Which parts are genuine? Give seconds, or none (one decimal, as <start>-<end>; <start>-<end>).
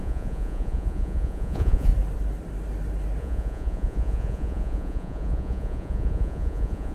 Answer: 1.9-3.2